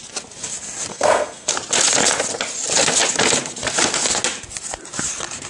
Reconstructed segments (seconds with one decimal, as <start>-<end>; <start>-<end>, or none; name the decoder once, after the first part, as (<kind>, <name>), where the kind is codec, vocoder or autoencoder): 0.9-1.5 (codec, SNAC)